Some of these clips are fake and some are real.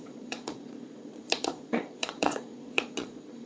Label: fake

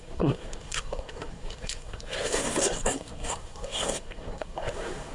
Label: fake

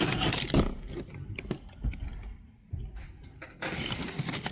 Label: fake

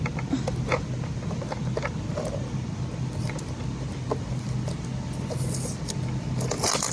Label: real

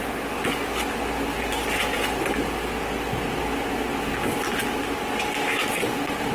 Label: real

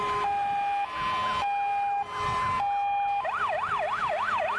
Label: real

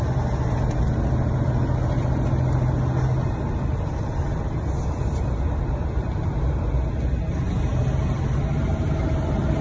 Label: real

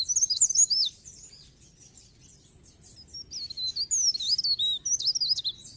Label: real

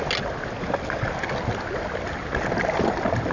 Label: real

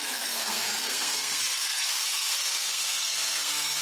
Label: fake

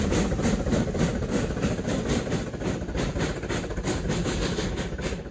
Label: real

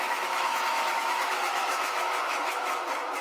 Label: fake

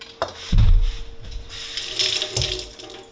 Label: real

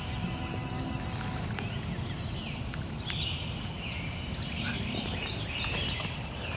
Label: real